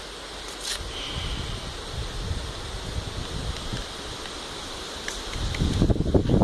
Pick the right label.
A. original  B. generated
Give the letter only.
A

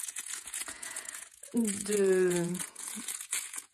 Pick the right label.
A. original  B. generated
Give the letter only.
B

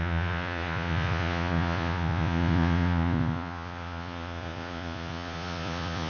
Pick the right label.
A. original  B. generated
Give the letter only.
B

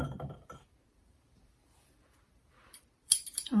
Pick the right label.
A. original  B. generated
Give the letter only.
B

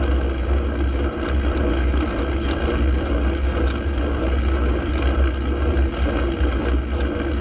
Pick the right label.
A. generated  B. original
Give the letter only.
B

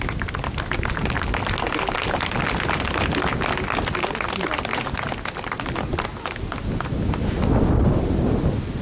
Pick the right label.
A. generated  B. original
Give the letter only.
B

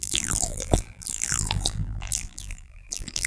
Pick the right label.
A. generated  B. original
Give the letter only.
A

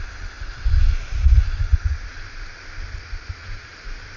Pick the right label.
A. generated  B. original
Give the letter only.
B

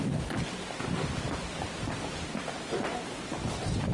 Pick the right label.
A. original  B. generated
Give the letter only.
B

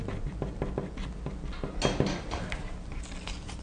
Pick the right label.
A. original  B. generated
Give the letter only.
A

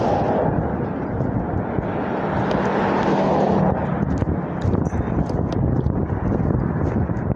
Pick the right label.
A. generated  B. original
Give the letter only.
B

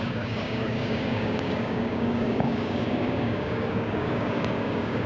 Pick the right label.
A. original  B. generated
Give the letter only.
B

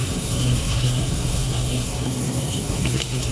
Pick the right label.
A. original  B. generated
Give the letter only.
B